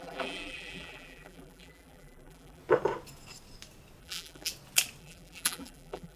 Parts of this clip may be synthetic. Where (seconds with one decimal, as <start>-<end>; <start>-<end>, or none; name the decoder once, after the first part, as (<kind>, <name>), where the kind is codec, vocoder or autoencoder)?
0.0-2.6 (vocoder, BigVGAN v2); 4.0-4.5; 5.0-6.2